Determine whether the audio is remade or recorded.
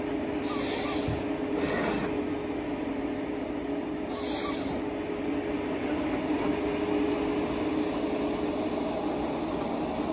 recorded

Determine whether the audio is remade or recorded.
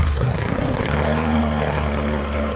remade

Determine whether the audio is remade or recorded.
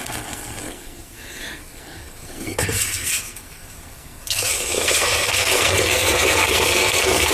remade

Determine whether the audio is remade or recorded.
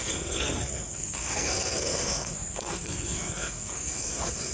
remade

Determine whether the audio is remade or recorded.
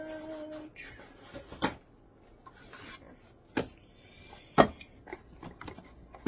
recorded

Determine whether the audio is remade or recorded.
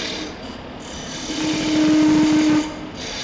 recorded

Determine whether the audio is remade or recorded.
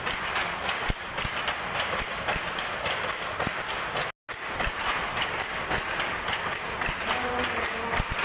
recorded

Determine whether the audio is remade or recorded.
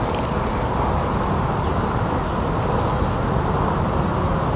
recorded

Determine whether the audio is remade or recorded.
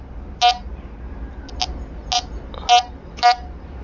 recorded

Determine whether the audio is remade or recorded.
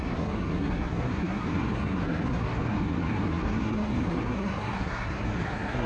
remade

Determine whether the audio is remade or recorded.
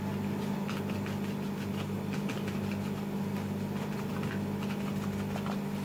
recorded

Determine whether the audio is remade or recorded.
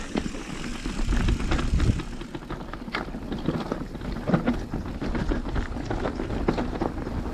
recorded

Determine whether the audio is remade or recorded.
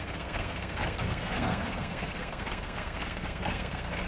remade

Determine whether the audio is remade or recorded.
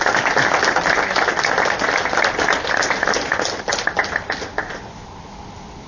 recorded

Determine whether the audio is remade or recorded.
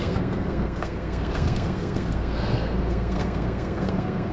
remade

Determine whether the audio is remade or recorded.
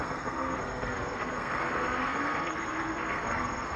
remade